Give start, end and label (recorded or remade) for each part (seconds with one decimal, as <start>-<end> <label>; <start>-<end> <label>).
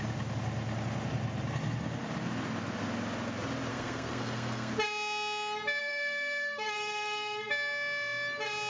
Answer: 0.0-3.7 recorded; 3.7-4.7 remade; 4.7-5.8 recorded; 5.8-7.5 remade; 7.5-8.7 recorded